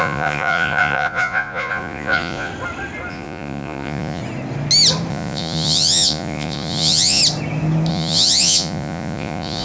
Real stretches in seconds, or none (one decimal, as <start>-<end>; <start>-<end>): 2.5-3.1; 4.2-5.1; 7.2-7.9